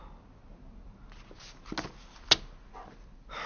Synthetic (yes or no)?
no